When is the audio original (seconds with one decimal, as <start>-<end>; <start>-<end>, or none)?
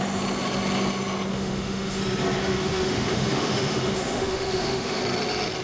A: 0.0-1.3; 2.0-2.4; 5.0-5.6